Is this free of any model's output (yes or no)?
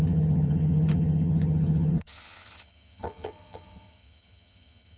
no